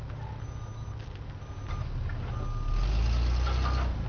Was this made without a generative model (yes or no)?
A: yes